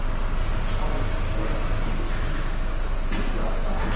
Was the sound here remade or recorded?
recorded